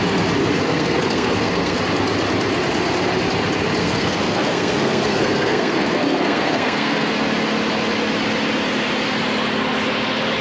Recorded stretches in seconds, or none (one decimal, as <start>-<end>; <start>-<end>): 0.0-0.4; 1.8-3.8; 7.1-10.4